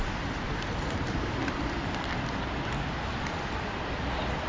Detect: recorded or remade recorded